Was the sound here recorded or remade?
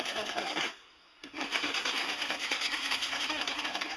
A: remade